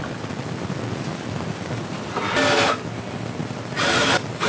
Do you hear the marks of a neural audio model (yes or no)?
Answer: no